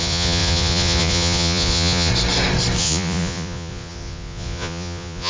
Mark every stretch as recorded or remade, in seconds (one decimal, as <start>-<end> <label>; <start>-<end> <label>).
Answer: 0.0-2.1 remade; 2.1-2.8 recorded; 2.8-5.3 remade

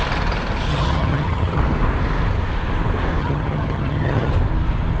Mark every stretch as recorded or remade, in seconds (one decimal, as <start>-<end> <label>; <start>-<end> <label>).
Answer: 0.0-0.7 recorded; 0.7-1.6 remade; 1.6-3.2 recorded; 3.2-4.3 remade; 4.3-5.0 recorded

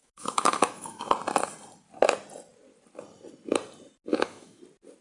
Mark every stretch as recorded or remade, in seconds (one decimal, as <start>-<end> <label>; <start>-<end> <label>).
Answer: 0.0-1.1 remade; 1.1-4.1 recorded; 4.1-4.6 remade; 4.6-5.0 recorded

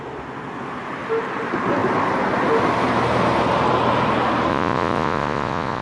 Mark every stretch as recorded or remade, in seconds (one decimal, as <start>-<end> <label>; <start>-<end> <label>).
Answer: 0.0-4.5 recorded; 4.5-5.8 remade

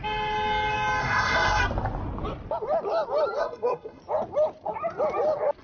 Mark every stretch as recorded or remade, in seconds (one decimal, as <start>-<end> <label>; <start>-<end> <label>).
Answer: 0.0-1.0 recorded; 1.0-1.6 remade; 1.6-3.4 recorded; 3.4-4.0 remade; 4.0-5.6 recorded

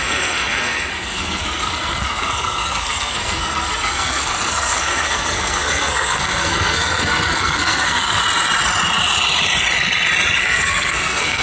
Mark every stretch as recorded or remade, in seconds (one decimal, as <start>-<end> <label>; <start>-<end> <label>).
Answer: 0.0-8.2 remade; 8.2-10.4 recorded; 10.4-11.4 remade

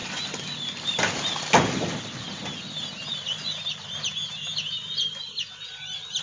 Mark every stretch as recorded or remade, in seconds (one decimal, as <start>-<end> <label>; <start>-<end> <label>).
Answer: 0.0-6.2 recorded

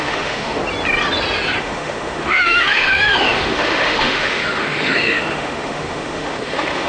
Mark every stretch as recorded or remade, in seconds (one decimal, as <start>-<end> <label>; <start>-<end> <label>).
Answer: 0.0-0.6 remade; 0.6-1.6 recorded; 1.6-6.9 remade